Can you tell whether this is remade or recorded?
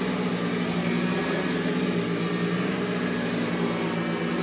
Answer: recorded